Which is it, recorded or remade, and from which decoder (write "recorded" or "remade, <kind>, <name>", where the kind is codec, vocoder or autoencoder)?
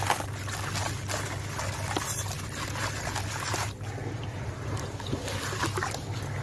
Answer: recorded